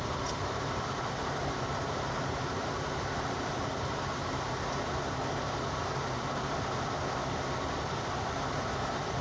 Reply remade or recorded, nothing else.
remade